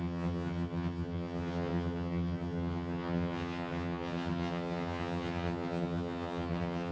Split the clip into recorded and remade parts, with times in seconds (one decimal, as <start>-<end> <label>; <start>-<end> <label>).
0.0-6.9 remade